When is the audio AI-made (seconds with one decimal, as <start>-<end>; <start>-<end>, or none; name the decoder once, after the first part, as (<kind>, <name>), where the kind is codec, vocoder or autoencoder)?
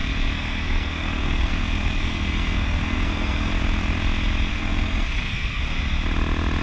0.0-3.5 (codec, SNAC); 4.5-5.6